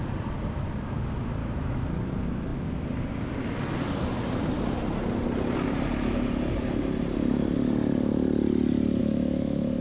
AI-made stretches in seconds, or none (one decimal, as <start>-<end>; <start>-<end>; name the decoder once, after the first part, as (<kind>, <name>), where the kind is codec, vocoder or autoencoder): 1.4-1.9 (autoencoder, DAC-VAE); 9.0-9.8